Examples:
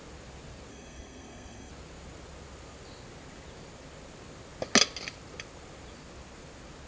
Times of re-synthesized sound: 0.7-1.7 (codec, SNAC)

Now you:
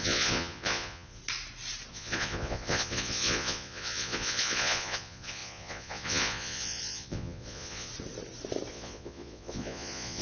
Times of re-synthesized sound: 0.0-1.2 (vocoder, Vocos); 1.9-7.9; 8.7-10.2

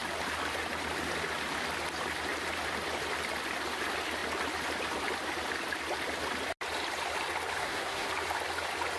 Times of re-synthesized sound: 7.6-8.1 (codec, SNAC)

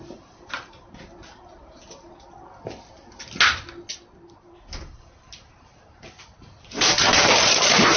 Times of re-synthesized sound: 0.0-1.8 (vocoder, BigVGAN v2); 3.9-8.0

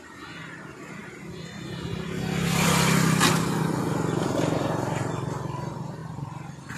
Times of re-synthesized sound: none

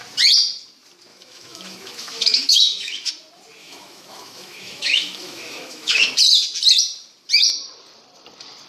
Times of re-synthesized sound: 1.1-3.1 (autoencoder, DAC-VAE); 3.6-6.1

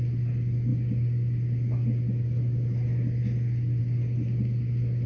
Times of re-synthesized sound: none

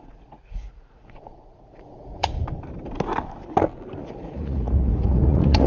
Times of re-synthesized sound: 0.0-2.3 (vocoder, Vocos); 4.0-5.7